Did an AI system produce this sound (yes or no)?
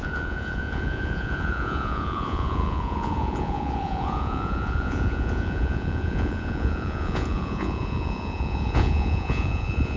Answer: yes